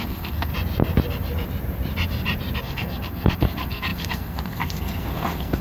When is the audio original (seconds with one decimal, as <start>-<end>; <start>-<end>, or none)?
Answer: 0.5-2.6